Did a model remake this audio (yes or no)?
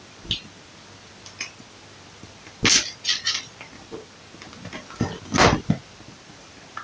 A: no